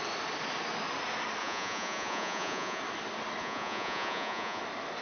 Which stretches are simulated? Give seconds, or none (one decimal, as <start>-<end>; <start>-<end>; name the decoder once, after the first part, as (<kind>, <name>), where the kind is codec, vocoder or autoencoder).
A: 1.4-2.8 (vocoder, Vocos); 3.4-4.6